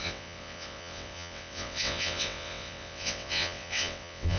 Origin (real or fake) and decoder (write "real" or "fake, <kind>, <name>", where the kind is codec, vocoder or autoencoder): fake, vocoder, WaveNeXt